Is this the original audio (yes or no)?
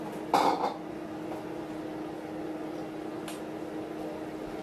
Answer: yes